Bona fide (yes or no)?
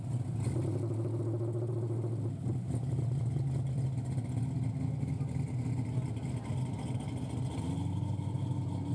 yes